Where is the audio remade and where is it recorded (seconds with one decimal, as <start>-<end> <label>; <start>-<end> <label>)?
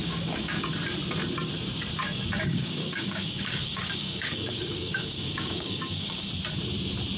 0.0-0.7 remade; 0.7-2.0 recorded; 2.0-6.3 remade; 6.3-7.2 recorded